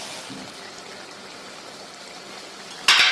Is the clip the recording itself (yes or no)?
yes